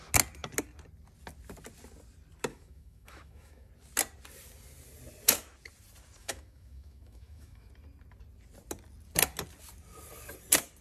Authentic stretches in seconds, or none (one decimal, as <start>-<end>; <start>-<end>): 0.0-2.5; 3.7-6.2; 7.7-10.8